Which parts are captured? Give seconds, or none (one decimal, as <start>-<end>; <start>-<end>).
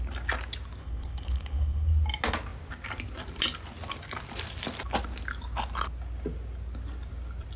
0.0-0.8; 1.9-7.6